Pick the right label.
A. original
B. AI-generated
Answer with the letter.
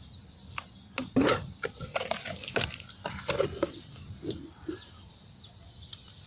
A